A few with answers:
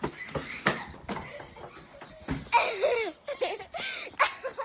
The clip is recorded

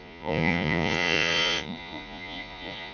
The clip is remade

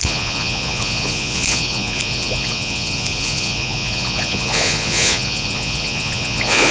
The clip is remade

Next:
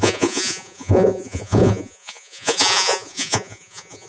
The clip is remade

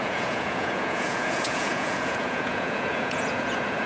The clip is remade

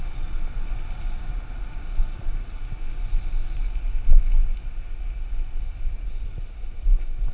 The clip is recorded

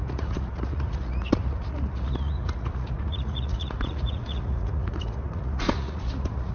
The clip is remade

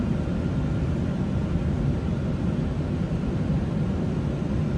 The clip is recorded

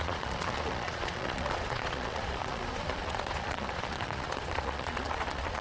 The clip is remade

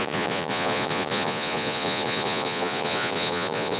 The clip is remade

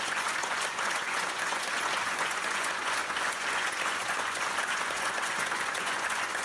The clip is remade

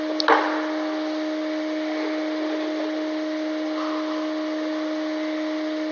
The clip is recorded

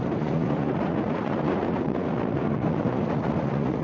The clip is remade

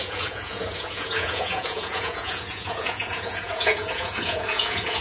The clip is remade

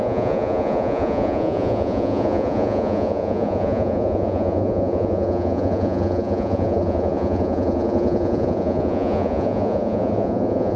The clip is remade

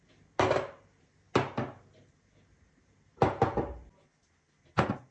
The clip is recorded